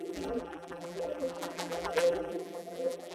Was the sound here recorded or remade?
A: remade